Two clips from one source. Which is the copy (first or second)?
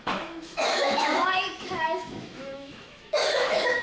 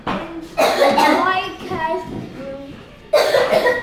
first